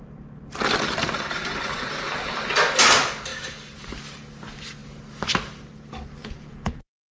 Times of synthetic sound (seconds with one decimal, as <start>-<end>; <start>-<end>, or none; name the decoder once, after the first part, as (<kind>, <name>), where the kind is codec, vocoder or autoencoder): 6.2-7.1 (vocoder, Vocos)